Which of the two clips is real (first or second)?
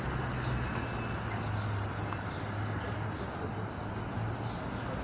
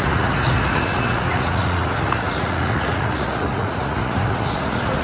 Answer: first